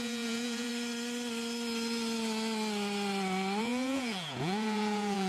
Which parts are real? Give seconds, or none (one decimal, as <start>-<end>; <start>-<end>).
0.7-3.6